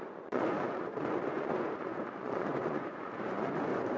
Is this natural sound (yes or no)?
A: no